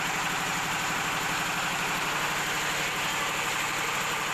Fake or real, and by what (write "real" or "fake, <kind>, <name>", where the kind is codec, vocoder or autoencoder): real